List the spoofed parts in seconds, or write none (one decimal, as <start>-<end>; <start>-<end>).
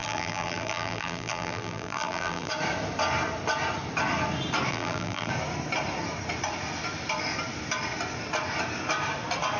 0.0-2.5; 4.7-5.3